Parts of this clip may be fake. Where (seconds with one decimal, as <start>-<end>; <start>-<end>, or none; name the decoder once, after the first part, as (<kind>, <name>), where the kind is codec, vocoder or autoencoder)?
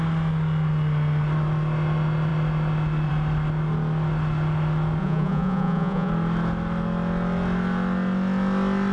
5.0-6.1 (vocoder, Vocos)